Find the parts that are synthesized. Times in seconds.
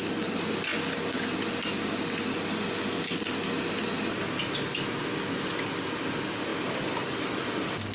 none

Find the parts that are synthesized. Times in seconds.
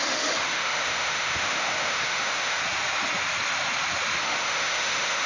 0.0-2.6 (autoencoder, DAC-VAE); 4.2-5.3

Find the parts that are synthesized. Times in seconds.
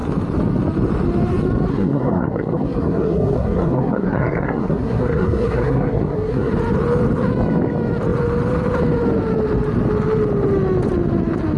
1.7-6.5 (codec, SNAC)